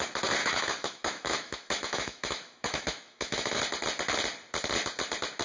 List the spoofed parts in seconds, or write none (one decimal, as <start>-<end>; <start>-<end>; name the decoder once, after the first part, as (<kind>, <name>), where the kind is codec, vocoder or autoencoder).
0.4-3.6 (autoencoder, DAC-VAE)